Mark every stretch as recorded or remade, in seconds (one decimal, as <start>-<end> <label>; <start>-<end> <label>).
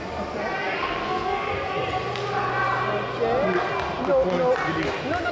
0.0-0.8 recorded; 0.8-1.5 remade; 1.5-5.3 recorded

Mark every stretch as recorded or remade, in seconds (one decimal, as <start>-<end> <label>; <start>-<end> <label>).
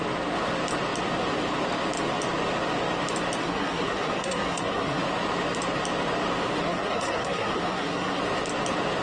0.0-3.4 recorded; 3.4-5.0 remade; 5.0-6.6 recorded; 6.6-8.2 remade; 8.2-9.0 recorded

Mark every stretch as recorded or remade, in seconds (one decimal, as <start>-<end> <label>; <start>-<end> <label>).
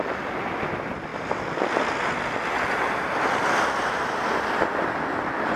0.0-5.6 recorded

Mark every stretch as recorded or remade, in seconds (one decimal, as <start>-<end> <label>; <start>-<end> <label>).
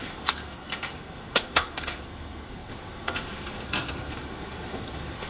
0.0-5.3 remade